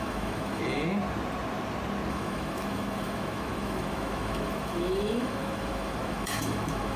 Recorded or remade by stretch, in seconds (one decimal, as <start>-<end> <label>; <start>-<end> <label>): 0.0-0.6 remade; 0.6-2.1 recorded; 2.1-7.0 remade